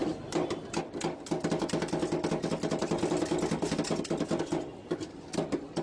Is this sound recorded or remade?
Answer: recorded